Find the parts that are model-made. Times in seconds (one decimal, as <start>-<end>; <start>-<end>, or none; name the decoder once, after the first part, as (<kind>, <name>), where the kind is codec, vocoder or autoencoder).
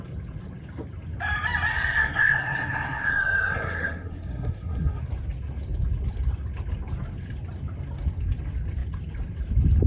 1.7-5.0 (codec, SNAC)